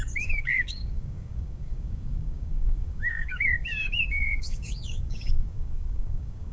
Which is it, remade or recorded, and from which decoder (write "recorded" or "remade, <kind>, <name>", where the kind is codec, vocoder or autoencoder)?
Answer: remade, codec, DAC